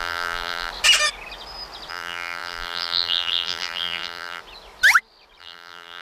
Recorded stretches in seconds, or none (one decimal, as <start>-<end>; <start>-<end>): 0.7-1.9; 4.4-5.4